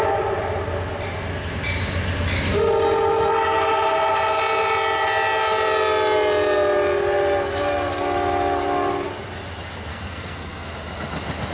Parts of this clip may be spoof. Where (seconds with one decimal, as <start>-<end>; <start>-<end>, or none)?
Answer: 9.9-10.7